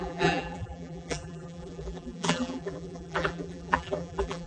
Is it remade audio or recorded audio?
remade